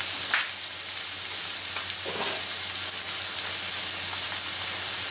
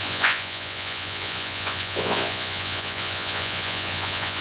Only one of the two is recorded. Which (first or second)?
first